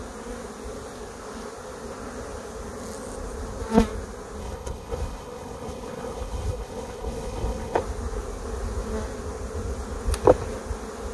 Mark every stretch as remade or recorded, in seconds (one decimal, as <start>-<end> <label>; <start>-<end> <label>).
0.0-4.4 recorded; 4.4-7.8 remade; 7.8-11.1 recorded